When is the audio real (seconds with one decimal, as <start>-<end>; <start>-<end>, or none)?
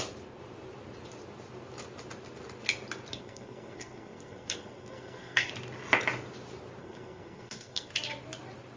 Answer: 0.0-3.1; 5.5-6.8; 7.9-8.8